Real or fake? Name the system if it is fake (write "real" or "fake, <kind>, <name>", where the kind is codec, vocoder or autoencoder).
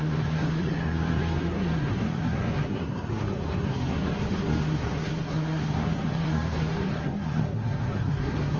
fake, codec, SNAC